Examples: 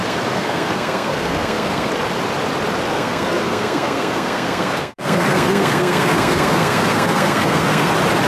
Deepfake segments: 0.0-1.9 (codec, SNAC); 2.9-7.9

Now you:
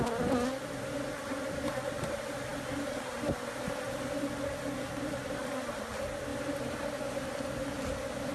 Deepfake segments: none

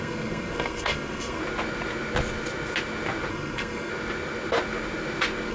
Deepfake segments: 0.0-1.4 (codec, SNAC); 3.3-3.9

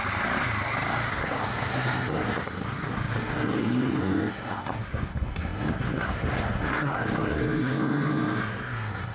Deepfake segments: 1.1-9.1 (codec, SNAC)

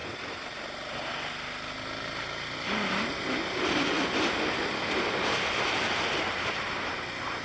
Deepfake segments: none